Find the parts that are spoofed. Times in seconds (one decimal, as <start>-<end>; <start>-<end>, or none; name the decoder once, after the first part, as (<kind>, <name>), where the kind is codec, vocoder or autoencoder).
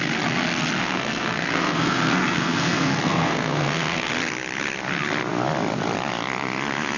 0.8-4.1 (codec, SNAC)